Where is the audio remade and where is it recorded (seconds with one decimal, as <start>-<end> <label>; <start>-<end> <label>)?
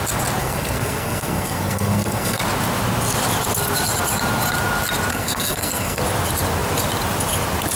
0.0-0.4 recorded; 0.4-2.4 remade; 2.4-5.1 recorded; 5.1-6.0 remade; 6.0-7.8 recorded